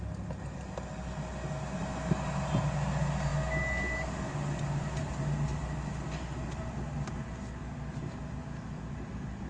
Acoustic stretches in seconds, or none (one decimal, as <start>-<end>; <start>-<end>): 0.0-9.5

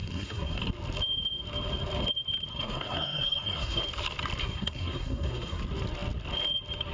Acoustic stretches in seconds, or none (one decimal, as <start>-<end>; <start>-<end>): 0.6-2.5; 3.8-4.4; 5.6-6.9

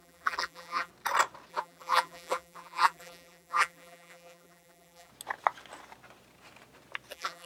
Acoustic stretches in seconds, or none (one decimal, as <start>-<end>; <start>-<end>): 0.9-1.5; 5.1-7.1

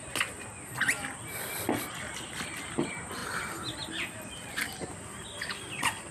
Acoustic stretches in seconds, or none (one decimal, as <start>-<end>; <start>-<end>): 0.0-6.1

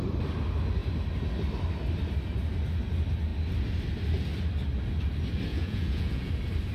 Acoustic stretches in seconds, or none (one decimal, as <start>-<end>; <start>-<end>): 0.0-5.5; 6.3-6.7

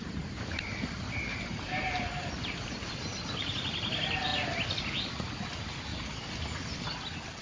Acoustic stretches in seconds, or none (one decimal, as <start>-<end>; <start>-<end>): 0.0-1.3; 2.6-7.4

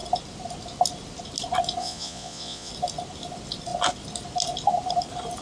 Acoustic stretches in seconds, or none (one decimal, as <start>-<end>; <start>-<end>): 0.0-1.8; 2.7-5.4